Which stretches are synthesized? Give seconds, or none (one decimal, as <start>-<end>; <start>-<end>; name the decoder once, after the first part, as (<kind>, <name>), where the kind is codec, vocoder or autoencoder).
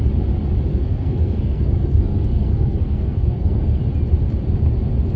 0.7-3.8 (codec, SNAC)